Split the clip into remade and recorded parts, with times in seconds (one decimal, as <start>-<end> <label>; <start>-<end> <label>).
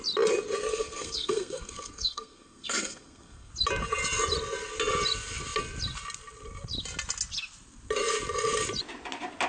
0.0-0.7 recorded; 0.7-3.5 remade; 3.5-9.5 recorded